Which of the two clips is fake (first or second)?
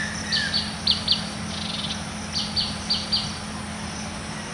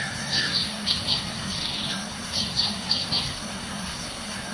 second